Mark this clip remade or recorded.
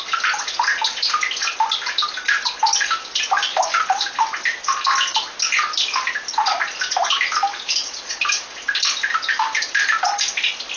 recorded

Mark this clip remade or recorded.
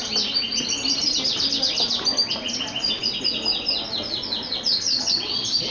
recorded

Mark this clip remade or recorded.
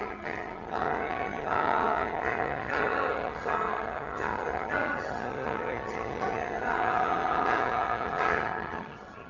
remade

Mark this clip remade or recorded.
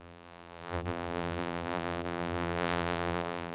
remade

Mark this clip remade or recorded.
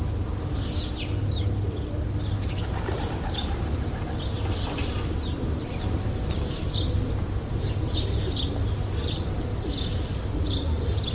recorded